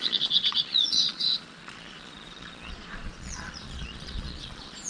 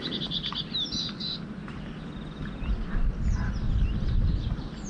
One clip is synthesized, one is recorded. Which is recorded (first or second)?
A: second